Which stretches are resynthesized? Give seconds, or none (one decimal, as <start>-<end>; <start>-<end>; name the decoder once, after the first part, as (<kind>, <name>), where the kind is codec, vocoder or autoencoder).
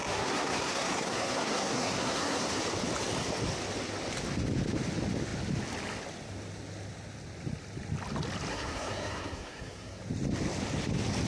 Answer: 0.0-2.6 (codec, SNAC); 8.5-10.0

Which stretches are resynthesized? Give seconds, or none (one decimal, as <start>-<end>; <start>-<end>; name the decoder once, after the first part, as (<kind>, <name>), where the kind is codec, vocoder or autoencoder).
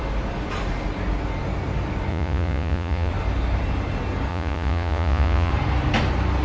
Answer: 2.1-3.1 (vocoder, Vocos); 4.3-5.5